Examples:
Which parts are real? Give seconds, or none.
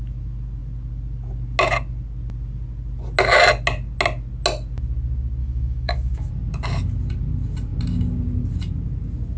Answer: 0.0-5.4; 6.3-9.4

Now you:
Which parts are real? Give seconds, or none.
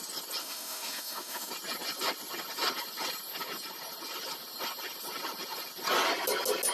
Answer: 0.0-0.4; 1.5-6.7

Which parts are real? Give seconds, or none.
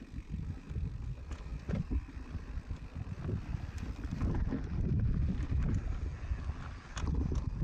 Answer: 0.0-7.6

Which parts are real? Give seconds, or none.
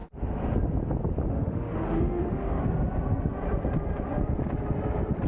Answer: 0.0-1.3; 2.6-5.3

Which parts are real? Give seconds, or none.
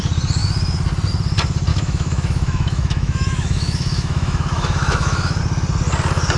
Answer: 0.0-1.7; 5.4-6.4